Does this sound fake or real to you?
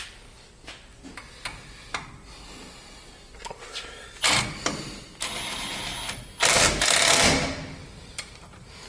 real